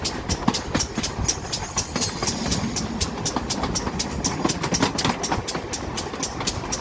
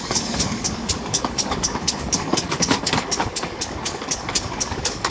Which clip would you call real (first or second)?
first